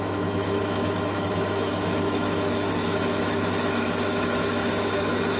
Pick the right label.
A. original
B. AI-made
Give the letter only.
B